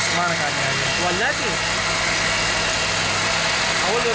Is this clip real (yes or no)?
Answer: yes